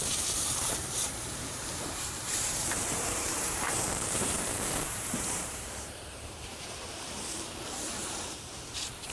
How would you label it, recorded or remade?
remade